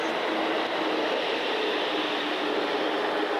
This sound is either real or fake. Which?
real